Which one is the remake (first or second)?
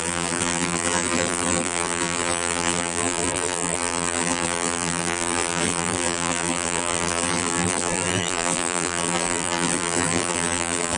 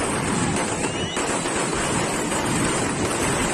first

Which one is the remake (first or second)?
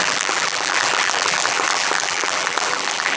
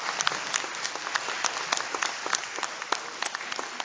first